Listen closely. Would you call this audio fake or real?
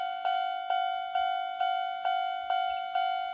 real